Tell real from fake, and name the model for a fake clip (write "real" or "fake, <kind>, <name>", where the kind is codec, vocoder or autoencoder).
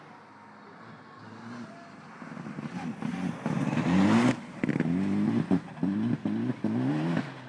real